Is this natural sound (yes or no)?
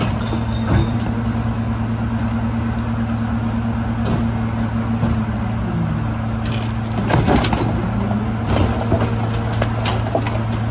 yes